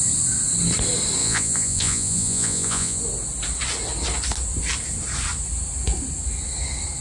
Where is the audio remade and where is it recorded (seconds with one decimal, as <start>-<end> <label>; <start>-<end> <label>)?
0.0-1.2 recorded; 1.2-3.0 remade; 3.0-7.0 recorded